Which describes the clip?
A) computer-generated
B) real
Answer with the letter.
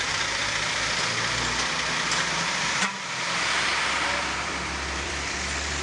A